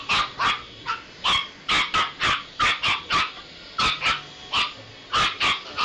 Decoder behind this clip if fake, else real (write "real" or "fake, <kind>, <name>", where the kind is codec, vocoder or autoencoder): real